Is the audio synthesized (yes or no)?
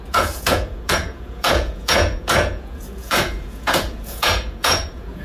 yes